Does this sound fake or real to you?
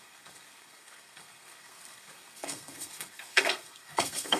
fake